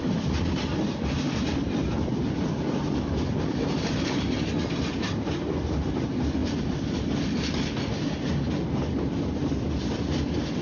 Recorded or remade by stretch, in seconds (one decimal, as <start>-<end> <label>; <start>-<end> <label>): 0.0-6.4 recorded; 6.4-7.1 remade; 7.1-10.6 recorded

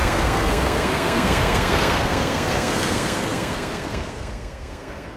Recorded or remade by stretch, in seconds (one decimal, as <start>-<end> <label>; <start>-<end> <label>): 0.0-5.2 remade

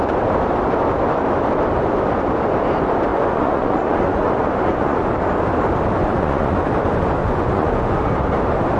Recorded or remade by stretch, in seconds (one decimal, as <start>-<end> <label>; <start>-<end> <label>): 0.0-3.1 recorded; 3.1-5.1 remade; 5.1-6.0 recorded; 6.0-6.6 remade; 6.6-7.2 recorded; 7.2-8.0 remade; 8.0-8.8 recorded